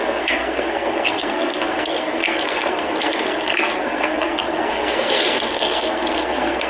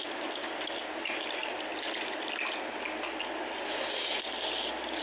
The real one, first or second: second